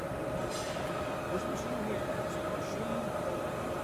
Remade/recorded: remade